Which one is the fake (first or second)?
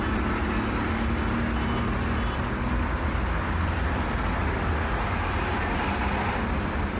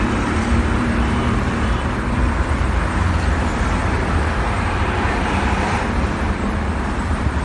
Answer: second